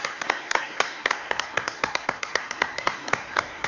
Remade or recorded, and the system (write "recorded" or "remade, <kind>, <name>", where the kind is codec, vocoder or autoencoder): remade, codec, SNAC